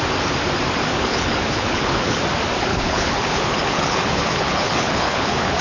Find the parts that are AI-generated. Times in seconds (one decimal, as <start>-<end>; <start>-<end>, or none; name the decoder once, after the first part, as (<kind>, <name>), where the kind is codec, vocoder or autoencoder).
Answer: 0.9-2.2 (codec, HILCodec); 2.7-5.6